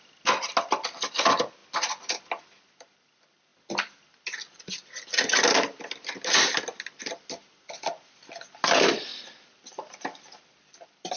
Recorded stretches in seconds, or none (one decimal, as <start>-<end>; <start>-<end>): 0.0-11.2